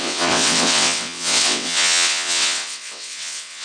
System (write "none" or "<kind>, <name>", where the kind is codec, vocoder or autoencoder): vocoder, WaveNeXt